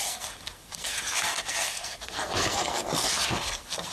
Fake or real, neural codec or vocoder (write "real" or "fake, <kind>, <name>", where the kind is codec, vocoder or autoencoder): fake, codec, SNAC